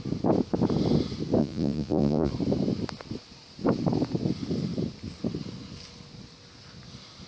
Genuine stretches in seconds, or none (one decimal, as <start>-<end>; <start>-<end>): 0.0-1.4; 2.3-7.3